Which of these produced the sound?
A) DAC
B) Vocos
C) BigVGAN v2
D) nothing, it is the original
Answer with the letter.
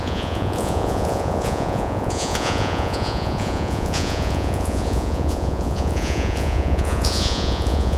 B